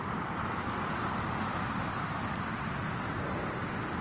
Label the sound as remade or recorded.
recorded